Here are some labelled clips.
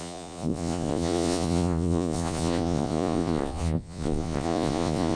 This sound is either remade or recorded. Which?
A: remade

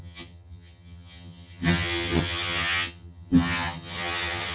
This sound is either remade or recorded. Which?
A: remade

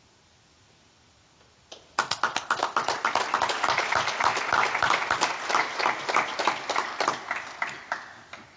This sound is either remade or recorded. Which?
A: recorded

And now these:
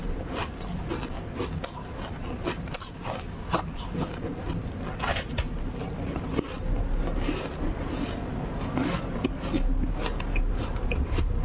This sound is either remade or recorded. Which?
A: recorded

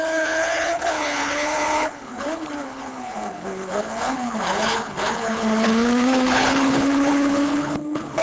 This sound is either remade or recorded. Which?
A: remade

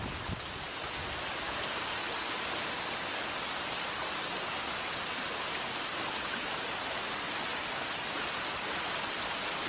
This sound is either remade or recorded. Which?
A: recorded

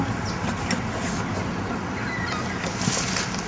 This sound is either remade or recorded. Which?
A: recorded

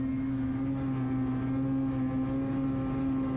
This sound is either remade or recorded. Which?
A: recorded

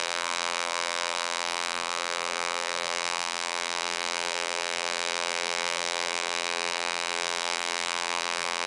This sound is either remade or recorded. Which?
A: remade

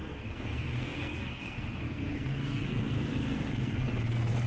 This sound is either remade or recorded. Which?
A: remade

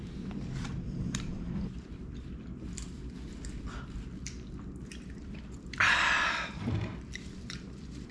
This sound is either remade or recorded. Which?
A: remade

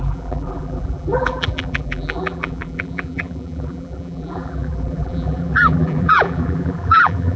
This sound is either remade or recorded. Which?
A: remade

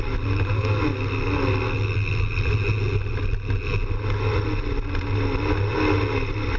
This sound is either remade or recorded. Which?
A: recorded